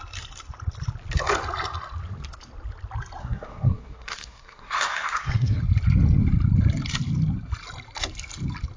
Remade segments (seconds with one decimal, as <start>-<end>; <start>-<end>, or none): 3.2-5.6